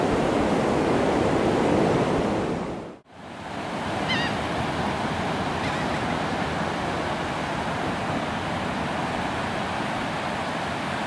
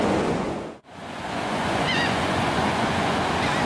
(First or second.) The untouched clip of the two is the first